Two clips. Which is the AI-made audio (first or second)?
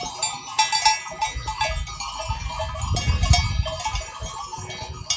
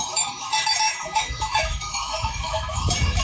second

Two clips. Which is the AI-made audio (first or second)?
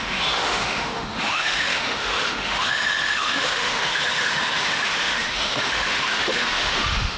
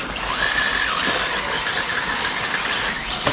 first